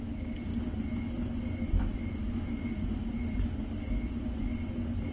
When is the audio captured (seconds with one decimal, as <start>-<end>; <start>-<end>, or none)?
0.0-5.1